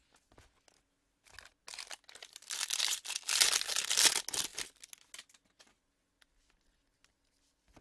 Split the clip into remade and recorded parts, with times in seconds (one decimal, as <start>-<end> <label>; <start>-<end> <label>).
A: 0.0-7.8 recorded